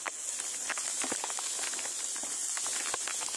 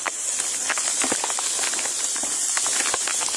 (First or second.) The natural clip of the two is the first